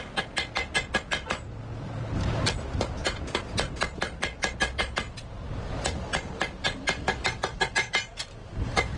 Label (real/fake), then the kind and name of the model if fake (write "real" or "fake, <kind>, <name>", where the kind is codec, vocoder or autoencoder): real